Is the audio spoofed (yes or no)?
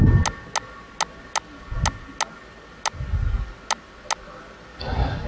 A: no